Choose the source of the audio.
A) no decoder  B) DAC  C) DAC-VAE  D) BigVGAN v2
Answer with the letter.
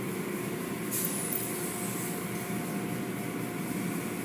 A